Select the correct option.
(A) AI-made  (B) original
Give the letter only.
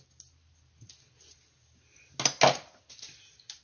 B